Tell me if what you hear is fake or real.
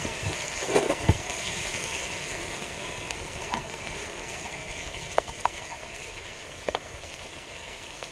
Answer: fake